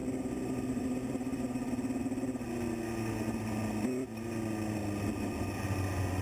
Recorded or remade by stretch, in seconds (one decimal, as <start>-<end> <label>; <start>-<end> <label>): 0.0-6.2 recorded